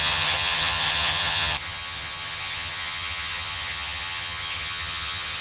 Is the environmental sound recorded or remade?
remade